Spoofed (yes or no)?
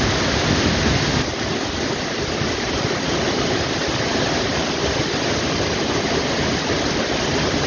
no